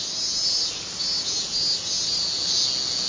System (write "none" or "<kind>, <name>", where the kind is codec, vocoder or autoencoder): none